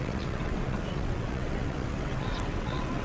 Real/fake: fake